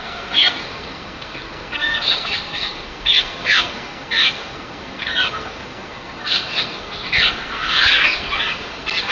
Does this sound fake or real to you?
fake